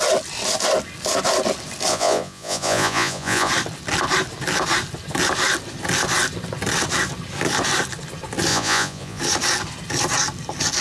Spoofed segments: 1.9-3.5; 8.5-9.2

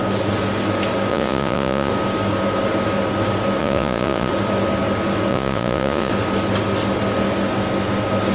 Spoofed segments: 1.1-1.9; 3.6-4.3; 5.3-6.1